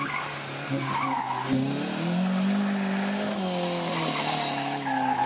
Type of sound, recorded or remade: recorded